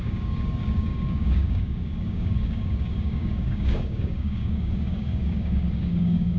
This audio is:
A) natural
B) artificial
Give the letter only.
B